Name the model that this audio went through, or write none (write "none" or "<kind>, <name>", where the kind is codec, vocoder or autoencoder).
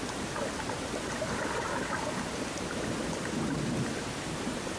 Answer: none